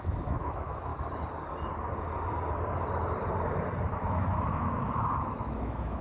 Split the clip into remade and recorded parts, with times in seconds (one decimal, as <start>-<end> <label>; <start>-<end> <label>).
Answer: 0.0-0.9 remade; 0.9-3.9 recorded; 3.9-6.0 remade

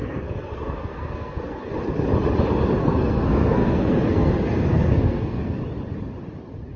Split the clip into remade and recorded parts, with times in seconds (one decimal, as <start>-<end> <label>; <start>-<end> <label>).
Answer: 0.0-1.7 remade; 1.7-2.8 recorded; 2.8-5.6 remade; 5.6-6.8 recorded

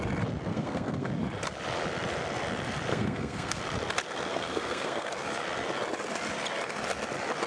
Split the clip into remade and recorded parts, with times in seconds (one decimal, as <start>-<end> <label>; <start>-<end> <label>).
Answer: 0.0-0.5 recorded; 0.5-1.1 remade; 1.1-2.9 recorded; 2.9-3.6 remade; 3.6-4.3 recorded; 4.3-5.1 remade; 5.1-7.5 recorded

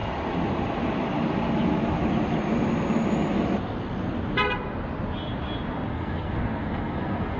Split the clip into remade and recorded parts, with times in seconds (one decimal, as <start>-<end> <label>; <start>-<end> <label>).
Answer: 0.0-5.9 recorded; 5.9-7.4 remade

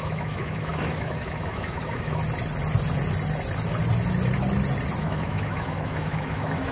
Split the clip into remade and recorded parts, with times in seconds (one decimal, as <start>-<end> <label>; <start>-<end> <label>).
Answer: 0.0-2.2 remade; 2.2-5.0 recorded; 5.0-6.7 remade